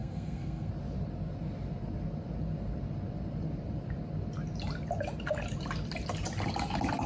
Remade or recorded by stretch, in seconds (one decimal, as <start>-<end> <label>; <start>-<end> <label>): 0.0-0.7 remade; 0.7-7.1 recorded